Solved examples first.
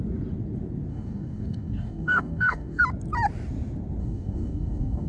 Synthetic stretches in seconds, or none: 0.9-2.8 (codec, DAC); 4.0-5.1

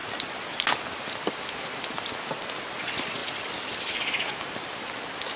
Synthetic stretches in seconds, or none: none

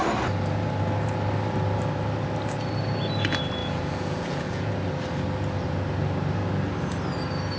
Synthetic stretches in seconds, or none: 3.6-4.7 (vocoder, Vocos)

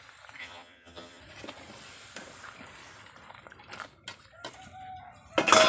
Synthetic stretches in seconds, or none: 0.4-1.2 (vocoder, HiFi-GAN)

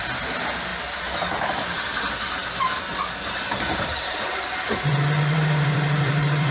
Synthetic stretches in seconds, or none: 3.7-6.5 (vocoder, BigVGAN v2)

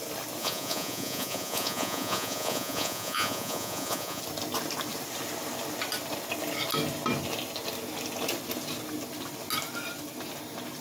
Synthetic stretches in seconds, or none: 0.4-4.2 (vocoder, Vocos)

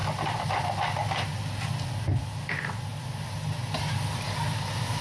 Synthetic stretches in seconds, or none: none

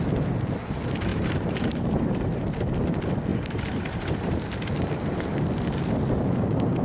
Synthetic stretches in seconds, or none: 1.1-2.4 (vocoder, BigVGAN v2); 3.3-4.7